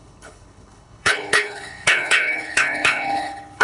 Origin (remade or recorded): remade